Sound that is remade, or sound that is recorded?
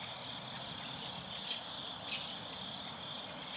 recorded